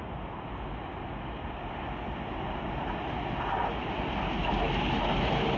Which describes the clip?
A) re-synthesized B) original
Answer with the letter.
B